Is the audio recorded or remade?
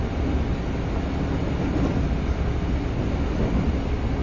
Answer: recorded